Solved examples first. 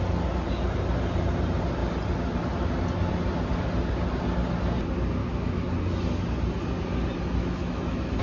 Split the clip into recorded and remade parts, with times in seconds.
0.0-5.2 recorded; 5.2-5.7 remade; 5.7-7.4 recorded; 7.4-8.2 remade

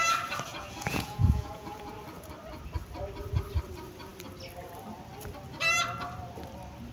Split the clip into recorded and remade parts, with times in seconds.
0.0-0.5 recorded; 0.5-1.9 remade; 1.9-6.9 recorded

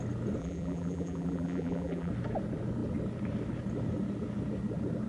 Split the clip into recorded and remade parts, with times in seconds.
0.0-0.4 recorded; 0.4-2.1 remade; 2.1-5.1 recorded

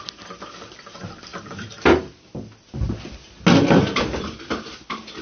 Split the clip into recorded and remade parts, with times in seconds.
0.0-5.2 recorded

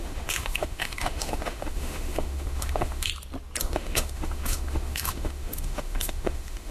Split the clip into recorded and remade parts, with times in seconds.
0.0-3.1 remade; 3.1-3.6 recorded; 3.6-6.7 remade

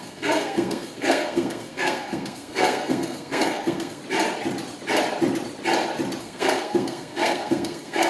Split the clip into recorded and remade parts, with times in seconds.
0.0-4.0 remade; 4.0-6.2 recorded; 6.2-8.1 remade